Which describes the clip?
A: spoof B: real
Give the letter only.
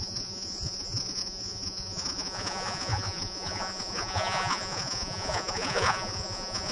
A